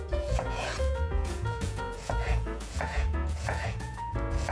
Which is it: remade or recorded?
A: remade